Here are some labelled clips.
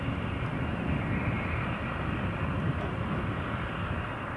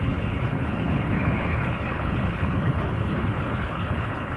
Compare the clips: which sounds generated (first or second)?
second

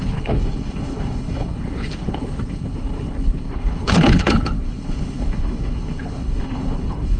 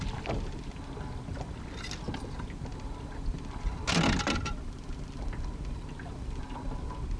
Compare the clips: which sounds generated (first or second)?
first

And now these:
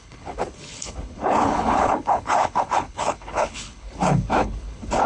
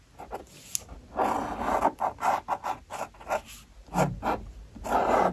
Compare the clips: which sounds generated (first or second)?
first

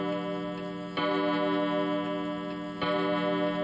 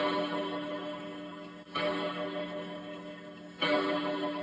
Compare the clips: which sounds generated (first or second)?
second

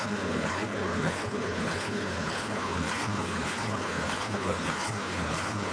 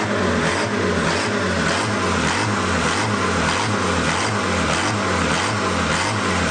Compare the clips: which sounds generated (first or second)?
first